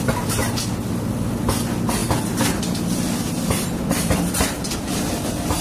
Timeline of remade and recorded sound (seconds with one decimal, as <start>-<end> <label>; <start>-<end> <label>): 0.0-5.6 remade